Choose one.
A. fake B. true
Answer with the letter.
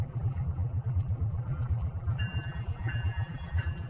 A